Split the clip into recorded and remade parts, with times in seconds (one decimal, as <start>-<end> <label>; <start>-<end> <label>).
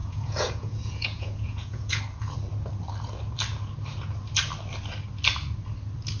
0.0-2.0 remade; 2.0-6.2 recorded